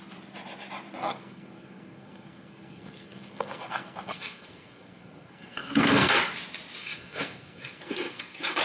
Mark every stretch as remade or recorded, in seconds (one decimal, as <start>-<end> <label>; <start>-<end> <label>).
0.0-1.0 recorded; 1.0-6.2 remade; 6.2-6.8 recorded; 6.8-8.6 remade

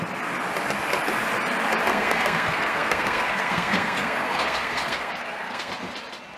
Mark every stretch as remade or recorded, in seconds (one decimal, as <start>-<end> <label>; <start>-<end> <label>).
0.0-1.9 recorded; 1.9-5.7 remade; 5.7-6.4 recorded

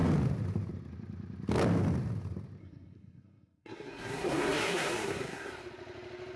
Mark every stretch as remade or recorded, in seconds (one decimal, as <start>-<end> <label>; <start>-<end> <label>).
0.0-2.6 recorded; 2.6-5.5 remade; 5.5-6.4 recorded